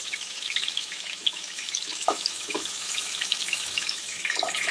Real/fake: fake